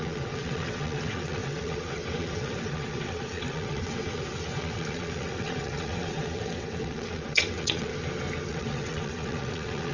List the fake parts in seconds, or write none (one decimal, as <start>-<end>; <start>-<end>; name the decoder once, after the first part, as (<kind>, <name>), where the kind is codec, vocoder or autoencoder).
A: 0.0-7.9 (vocoder, WaveNeXt); 8.5-9.9